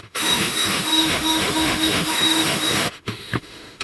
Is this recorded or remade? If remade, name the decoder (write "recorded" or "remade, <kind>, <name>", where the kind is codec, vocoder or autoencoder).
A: remade, autoencoder, DAC-VAE